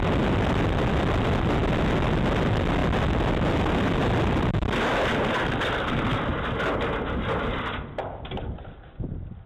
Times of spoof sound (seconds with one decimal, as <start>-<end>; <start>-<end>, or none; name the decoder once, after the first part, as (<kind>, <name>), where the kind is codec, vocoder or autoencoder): none